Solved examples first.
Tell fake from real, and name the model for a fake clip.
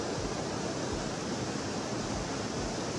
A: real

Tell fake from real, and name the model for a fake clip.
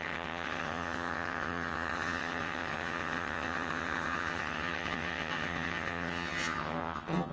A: fake, vocoder, HiFi-GAN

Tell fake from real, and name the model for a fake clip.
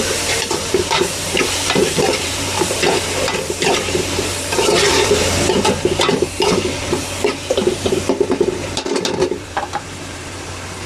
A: fake, vocoder, BigVGAN v2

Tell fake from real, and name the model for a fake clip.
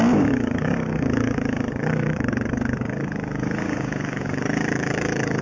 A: fake, codec, DAC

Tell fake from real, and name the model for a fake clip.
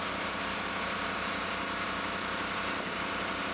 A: real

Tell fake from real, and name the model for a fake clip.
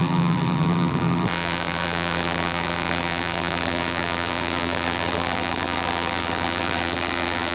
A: fake, vocoder, BigVGAN v2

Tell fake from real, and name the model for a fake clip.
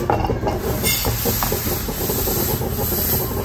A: real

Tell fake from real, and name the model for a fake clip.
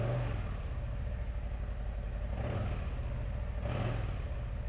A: real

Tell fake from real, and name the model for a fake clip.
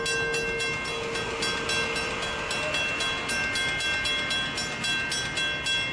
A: real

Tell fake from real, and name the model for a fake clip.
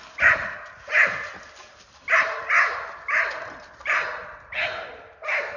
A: real